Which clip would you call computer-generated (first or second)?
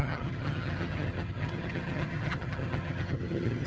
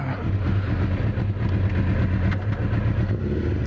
first